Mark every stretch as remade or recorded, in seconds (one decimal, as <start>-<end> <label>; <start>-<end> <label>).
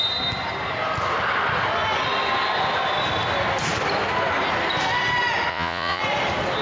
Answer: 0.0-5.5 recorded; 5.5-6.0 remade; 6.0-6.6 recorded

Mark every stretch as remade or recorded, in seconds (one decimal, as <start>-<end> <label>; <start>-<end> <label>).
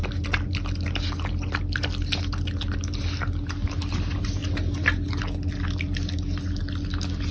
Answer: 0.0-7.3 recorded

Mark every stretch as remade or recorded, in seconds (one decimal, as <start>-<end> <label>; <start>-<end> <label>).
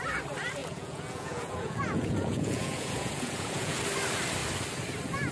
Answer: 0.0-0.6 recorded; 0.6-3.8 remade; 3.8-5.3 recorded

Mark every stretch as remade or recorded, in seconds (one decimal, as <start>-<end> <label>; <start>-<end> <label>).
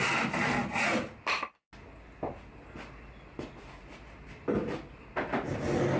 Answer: 0.0-6.0 recorded